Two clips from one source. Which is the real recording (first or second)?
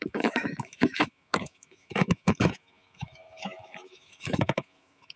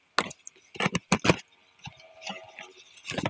second